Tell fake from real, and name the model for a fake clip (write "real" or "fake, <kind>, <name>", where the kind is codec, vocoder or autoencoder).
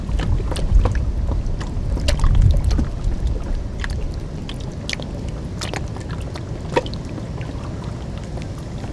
real